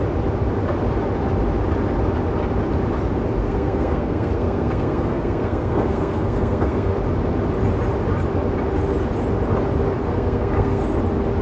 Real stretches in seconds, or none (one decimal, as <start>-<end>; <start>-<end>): 0.0-3.4; 6.9-10.0; 10.8-11.4